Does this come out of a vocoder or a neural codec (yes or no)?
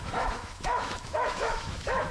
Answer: yes